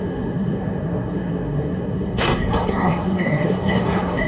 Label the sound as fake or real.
fake